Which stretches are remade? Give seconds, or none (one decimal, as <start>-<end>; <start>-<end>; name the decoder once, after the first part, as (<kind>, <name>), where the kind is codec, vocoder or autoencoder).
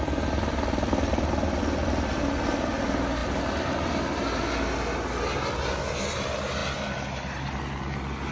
none